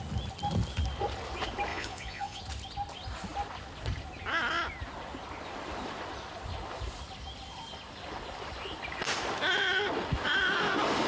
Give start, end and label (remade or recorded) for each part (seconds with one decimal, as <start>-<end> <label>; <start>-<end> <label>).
0.0-1.7 recorded; 1.7-2.4 remade; 2.4-11.1 recorded